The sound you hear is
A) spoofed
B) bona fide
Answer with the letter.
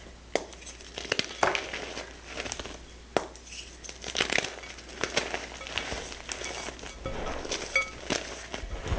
B